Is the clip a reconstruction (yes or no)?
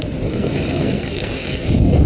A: yes